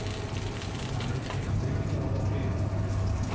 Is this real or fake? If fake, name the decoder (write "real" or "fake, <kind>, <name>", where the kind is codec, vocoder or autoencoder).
real